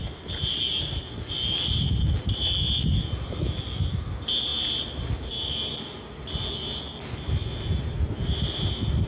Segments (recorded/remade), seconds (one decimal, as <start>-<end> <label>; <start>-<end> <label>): 0.0-9.1 recorded